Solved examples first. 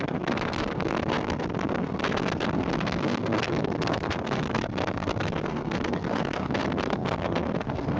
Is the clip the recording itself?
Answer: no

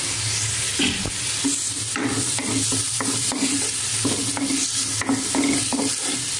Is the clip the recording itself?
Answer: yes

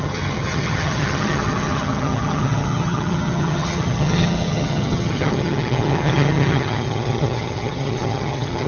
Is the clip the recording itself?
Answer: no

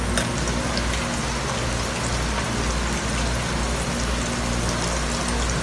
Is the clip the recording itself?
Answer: yes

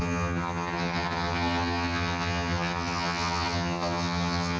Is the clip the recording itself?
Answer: no